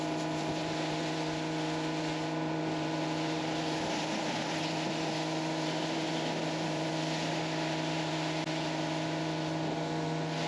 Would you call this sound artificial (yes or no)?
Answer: no